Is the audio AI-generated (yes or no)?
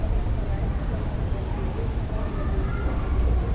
no